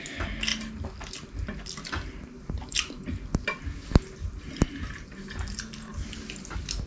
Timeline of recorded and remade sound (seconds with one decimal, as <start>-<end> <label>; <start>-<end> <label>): 0.0-6.9 recorded